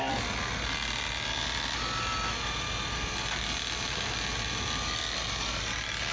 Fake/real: real